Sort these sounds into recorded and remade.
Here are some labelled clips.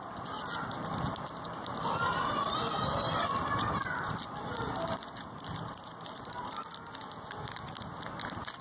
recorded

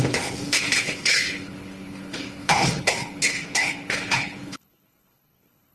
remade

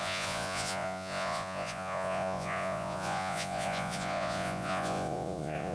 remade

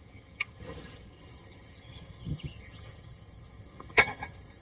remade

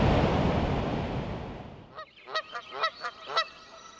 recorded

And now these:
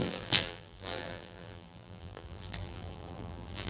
remade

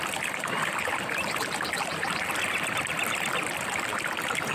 remade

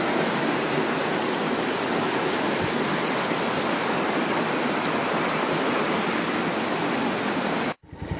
recorded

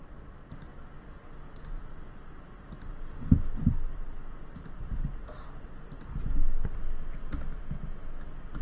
recorded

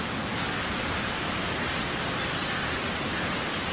recorded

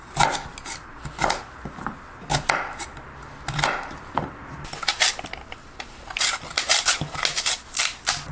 recorded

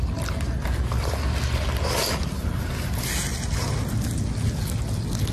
recorded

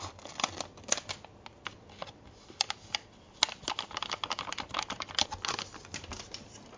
recorded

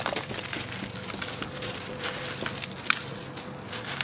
recorded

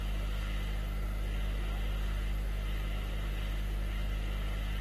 recorded